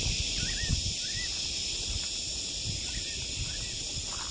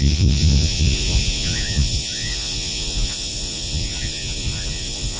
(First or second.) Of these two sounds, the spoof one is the second